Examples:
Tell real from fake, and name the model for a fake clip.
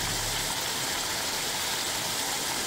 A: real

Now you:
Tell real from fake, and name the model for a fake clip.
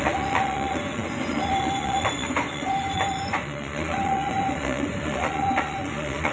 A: fake, vocoder, Vocos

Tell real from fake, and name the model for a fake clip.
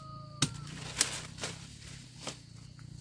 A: real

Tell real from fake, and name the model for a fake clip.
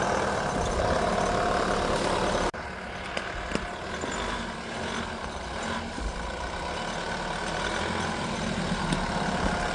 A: real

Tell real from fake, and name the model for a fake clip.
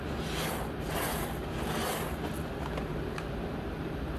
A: real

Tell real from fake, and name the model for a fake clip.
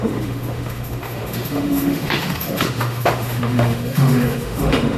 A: fake, autoencoder, DAC-VAE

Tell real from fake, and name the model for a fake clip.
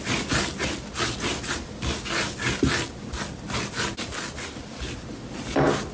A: real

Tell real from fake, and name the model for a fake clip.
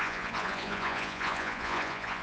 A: fake, vocoder, Vocos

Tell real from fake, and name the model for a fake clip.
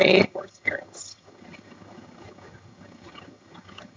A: fake, vocoder, HiFi-GAN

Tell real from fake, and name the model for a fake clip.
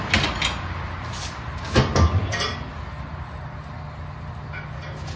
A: real